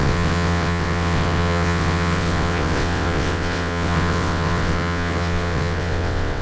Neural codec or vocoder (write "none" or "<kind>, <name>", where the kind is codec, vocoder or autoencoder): vocoder, WaveNeXt